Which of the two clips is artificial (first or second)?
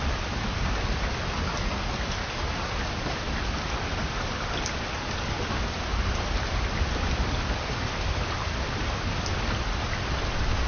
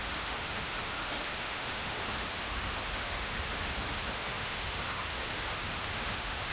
second